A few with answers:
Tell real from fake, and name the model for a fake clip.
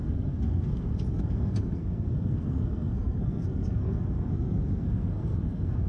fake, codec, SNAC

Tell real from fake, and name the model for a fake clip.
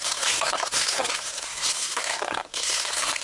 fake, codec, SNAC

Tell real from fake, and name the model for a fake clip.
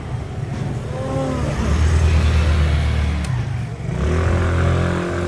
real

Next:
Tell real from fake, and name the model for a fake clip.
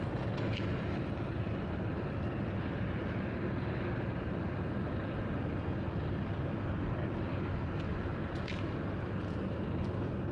real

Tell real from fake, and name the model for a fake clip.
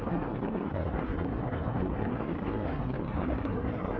fake, codec, SNAC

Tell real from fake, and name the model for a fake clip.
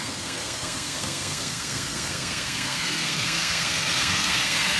fake, codec, SNAC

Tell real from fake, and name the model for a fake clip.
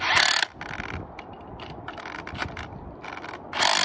real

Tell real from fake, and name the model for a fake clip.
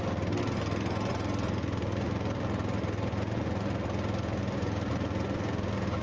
real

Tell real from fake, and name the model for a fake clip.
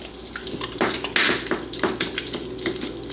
real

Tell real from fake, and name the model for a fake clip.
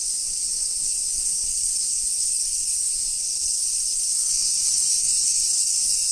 fake, codec, SNAC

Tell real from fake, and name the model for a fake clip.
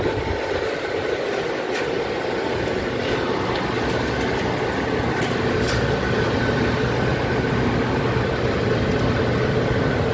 real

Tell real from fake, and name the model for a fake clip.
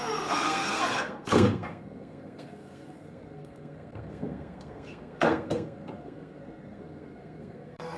fake, codec, SNAC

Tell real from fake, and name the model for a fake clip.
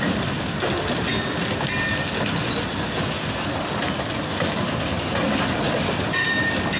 real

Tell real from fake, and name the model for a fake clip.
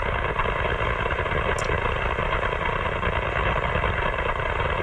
real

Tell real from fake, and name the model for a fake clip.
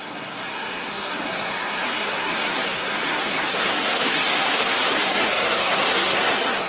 fake, codec, SNAC